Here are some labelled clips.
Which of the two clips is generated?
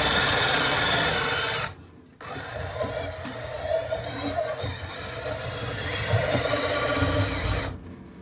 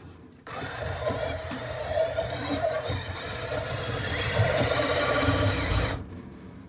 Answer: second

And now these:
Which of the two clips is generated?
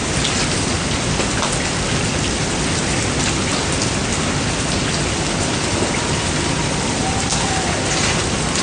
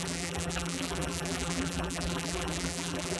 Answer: second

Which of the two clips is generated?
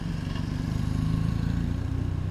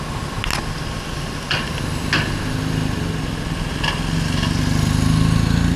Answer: first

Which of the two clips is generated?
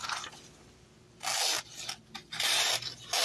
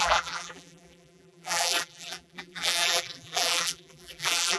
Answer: second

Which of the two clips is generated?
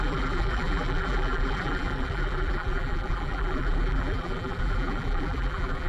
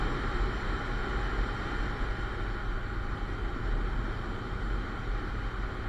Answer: first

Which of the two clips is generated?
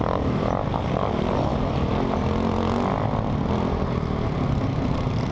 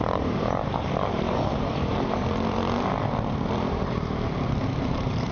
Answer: second